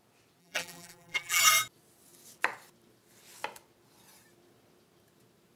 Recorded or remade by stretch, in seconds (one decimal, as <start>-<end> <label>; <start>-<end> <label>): 0.0-0.4 recorded; 0.4-1.4 remade; 1.4-5.6 recorded

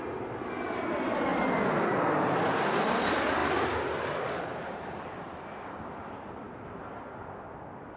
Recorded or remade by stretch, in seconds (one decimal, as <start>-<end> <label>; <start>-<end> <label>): 0.0-8.0 recorded

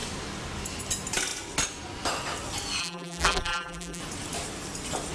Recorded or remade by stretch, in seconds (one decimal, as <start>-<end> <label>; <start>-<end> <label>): 0.0-2.8 recorded; 2.8-4.0 remade; 4.0-5.1 recorded

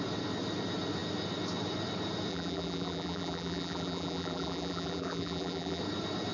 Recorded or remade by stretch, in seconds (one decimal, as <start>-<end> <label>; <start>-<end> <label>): 0.0-2.3 recorded; 2.3-5.8 remade; 5.8-6.3 recorded